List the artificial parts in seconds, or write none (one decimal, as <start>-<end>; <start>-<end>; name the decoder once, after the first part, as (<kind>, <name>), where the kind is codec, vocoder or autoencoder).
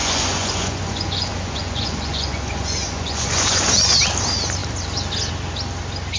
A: 0.0-3.7 (vocoder, Vocos)